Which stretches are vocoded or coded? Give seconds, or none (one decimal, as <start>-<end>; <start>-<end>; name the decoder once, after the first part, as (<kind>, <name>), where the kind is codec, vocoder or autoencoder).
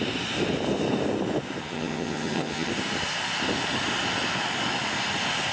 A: 1.6-2.7 (vocoder, HiFi-GAN)